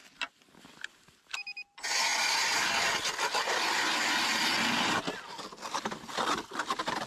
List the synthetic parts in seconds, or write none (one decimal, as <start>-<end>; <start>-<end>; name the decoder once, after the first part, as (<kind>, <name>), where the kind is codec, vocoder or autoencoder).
none